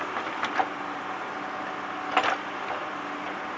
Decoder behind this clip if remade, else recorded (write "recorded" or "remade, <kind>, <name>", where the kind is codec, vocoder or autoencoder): recorded